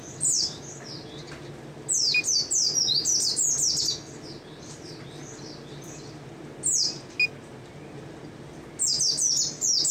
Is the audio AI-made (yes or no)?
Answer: no